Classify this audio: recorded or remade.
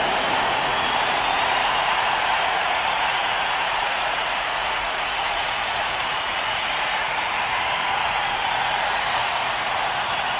remade